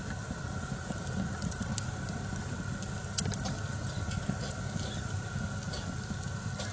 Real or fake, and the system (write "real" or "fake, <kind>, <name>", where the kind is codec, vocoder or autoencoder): real